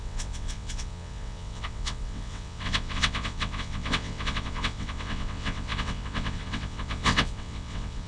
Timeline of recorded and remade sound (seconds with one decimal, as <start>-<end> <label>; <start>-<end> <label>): 0.0-8.1 remade